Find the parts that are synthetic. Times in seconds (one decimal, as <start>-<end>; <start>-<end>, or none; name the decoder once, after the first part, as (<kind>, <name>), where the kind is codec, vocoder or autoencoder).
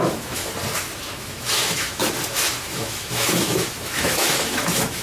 0.0-0.4 (autoencoder, DAC-VAE); 1.1-2.0; 2.6-5.0